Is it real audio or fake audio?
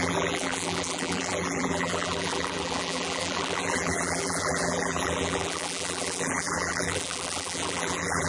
fake